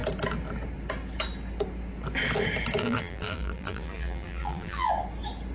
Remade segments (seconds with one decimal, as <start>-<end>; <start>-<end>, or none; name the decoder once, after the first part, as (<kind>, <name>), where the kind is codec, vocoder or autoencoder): 2.8-4.9 (vocoder, BigVGAN v2)